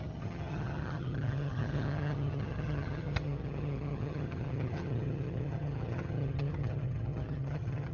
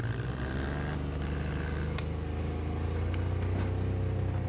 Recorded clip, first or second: second